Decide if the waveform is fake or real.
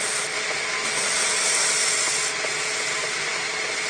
real